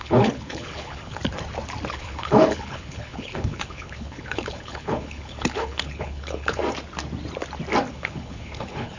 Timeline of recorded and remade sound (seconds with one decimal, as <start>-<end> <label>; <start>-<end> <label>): 0.0-1.2 remade; 1.2-1.9 recorded; 1.9-6.6 remade; 6.6-7.9 recorded; 7.9-9.0 remade